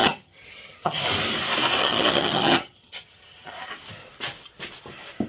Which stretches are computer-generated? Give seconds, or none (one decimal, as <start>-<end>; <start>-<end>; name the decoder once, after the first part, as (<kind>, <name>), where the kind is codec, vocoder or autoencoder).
0.0-1.0 (vocoder, HiFi-GAN); 1.8-3.7